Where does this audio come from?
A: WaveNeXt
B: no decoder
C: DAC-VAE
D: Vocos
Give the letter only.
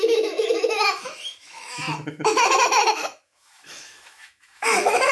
C